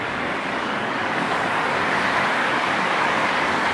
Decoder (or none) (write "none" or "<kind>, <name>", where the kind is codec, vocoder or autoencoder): codec, DAC